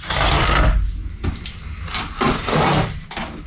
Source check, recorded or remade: recorded